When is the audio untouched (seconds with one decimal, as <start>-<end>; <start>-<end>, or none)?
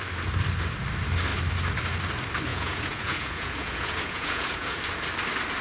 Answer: 0.0-2.5; 4.8-5.6